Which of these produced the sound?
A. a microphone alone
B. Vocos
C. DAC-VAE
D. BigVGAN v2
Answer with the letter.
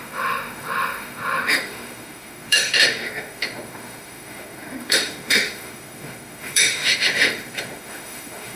C